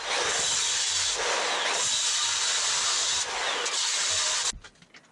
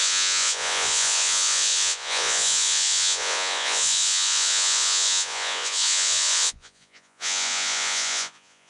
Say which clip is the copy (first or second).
second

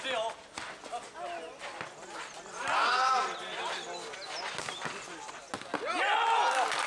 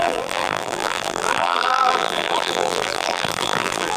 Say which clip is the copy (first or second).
second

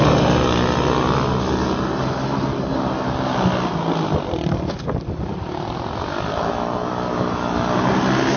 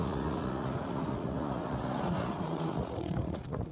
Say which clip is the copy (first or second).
second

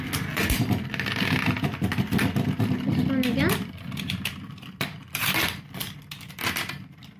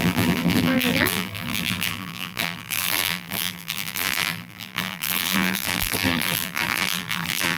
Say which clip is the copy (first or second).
second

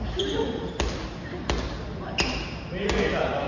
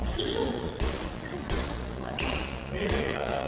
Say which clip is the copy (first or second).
second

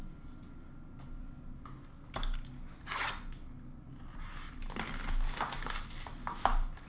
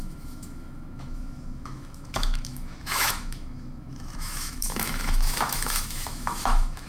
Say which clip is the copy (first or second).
second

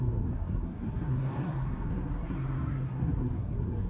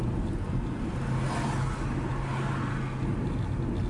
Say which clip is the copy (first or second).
first